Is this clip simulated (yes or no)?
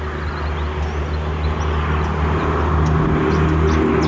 no